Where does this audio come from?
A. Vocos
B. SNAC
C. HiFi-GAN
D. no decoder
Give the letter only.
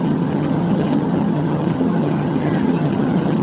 C